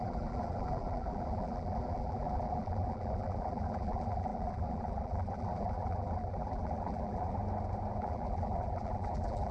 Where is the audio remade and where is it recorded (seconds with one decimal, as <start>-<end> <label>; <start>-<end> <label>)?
0.0-7.4 remade; 7.4-8.0 recorded; 8.0-9.5 remade